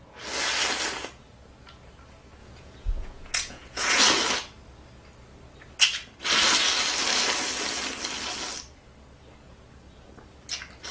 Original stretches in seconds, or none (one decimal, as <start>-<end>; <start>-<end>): 0.0-2.4; 4.0-10.9